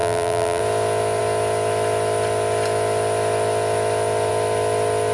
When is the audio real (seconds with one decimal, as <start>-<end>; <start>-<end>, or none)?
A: 0.6-5.1

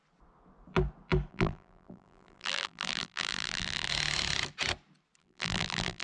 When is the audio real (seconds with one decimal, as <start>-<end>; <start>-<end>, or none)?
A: 0.0-1.3; 3.9-5.2